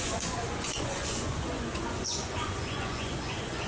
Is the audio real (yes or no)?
no